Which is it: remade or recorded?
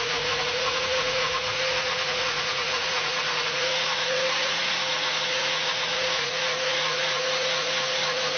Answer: remade